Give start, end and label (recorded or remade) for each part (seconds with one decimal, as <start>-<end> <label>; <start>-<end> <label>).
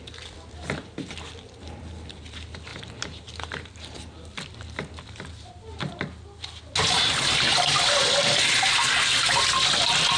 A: 0.0-2.7 recorded; 2.7-4.9 remade; 4.9-10.2 recorded